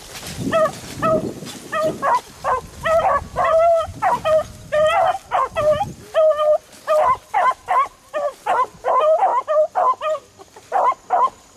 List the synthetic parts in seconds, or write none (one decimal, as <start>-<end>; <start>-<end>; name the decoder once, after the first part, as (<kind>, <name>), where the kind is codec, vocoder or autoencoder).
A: none